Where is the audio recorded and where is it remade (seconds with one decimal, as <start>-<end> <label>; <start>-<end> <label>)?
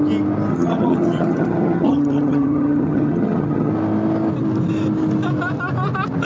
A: 0.0-0.5 recorded; 0.5-3.7 remade; 3.7-6.2 recorded